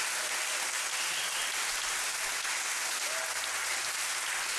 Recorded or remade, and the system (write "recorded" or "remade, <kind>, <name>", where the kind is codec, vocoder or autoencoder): recorded